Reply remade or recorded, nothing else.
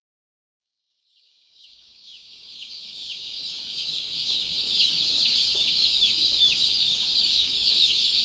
remade